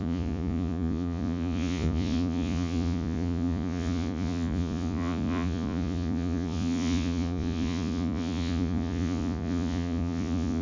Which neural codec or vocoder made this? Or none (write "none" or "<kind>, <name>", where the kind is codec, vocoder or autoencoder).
vocoder, Vocos